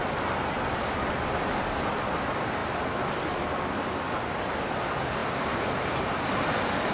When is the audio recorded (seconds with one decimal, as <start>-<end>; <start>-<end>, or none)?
0.0-6.9